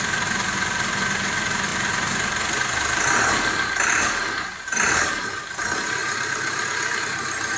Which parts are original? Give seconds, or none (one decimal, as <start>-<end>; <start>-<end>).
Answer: 0.0-7.6